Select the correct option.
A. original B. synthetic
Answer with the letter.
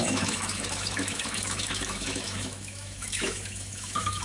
B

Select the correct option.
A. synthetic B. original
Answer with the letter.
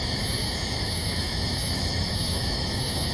A